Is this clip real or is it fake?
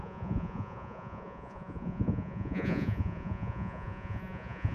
fake